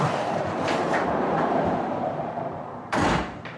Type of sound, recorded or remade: remade